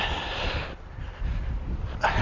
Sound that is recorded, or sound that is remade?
recorded